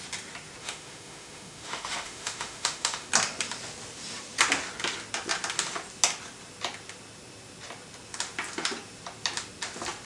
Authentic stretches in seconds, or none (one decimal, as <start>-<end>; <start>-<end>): 0.0-0.6; 3.1-10.0